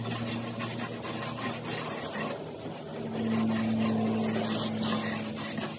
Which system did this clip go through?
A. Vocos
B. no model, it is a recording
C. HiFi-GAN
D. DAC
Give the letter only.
B